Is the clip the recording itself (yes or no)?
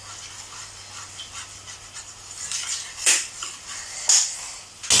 yes